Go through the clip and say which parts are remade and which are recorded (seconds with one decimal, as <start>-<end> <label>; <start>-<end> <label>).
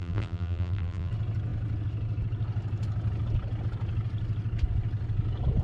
0.0-1.1 remade; 1.1-5.6 recorded